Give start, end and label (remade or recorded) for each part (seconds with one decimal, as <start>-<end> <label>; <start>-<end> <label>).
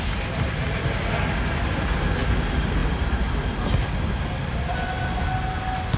0.0-6.0 recorded